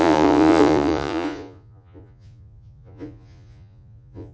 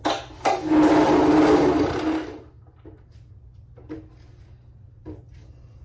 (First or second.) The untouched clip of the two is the second